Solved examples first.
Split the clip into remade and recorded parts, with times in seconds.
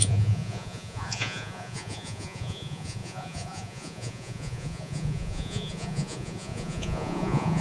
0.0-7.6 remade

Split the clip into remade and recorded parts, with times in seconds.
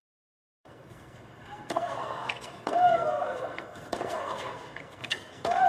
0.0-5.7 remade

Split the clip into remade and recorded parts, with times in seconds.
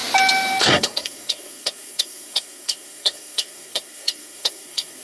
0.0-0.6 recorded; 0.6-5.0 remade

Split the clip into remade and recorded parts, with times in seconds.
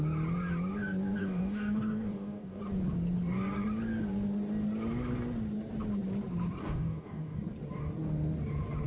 0.0-1.2 recorded; 1.2-2.6 remade; 2.6-6.6 recorded; 6.6-7.4 remade; 7.4-8.9 recorded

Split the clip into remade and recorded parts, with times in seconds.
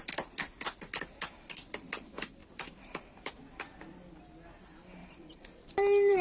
0.0-2.4 recorded; 2.4-3.3 remade; 3.3-5.0 recorded; 5.0-5.7 remade; 5.7-6.2 recorded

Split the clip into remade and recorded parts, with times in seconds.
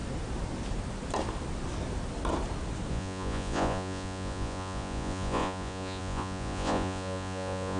0.0-2.9 recorded; 2.9-7.8 remade